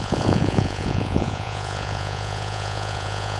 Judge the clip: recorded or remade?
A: remade